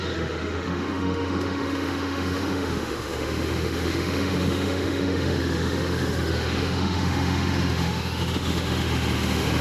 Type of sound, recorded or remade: remade